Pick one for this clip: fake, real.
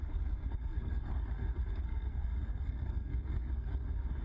fake